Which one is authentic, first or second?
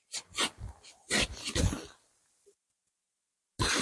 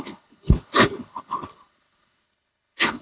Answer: first